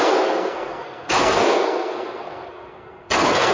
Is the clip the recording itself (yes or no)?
no